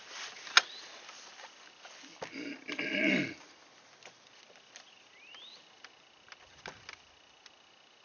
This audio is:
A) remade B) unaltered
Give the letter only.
B